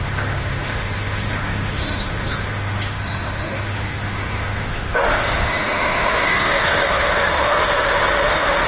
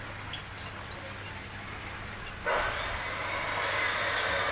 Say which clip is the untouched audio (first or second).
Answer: second